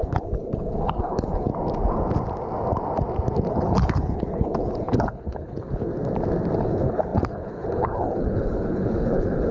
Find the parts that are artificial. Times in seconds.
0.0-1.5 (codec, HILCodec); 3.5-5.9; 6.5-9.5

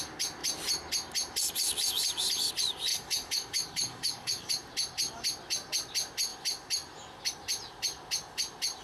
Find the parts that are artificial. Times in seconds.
2.9-4.5 (codec, DAC)

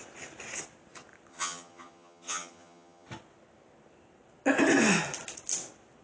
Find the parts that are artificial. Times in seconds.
1.3-3.1 (vocoder, HiFi-GAN)

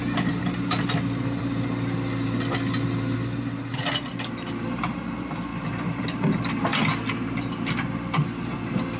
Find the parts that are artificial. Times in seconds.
0.4-1.4 (vocoder, BigVGAN v2); 5.5-6.0

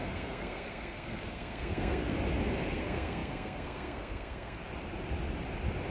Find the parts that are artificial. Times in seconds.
0.0-2.1 (codec, SNAC); 2.7-4.6

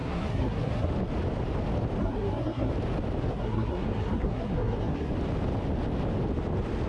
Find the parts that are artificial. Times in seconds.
0.0-0.9 (codec, SNAC); 2.0-2.7; 3.3-5.1

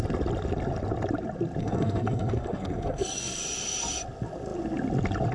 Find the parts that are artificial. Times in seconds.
1.6-3.4 (codec, SNAC)

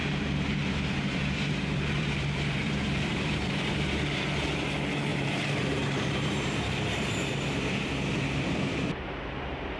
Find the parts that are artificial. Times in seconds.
0.0-3.7 (vocoder, BigVGAN v2); 5.1-7.1